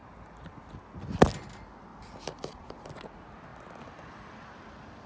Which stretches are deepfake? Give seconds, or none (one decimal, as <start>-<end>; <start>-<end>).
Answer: 1.9-2.9